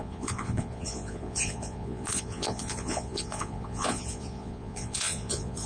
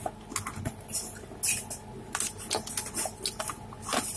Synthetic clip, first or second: first